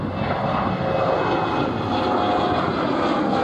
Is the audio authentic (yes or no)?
yes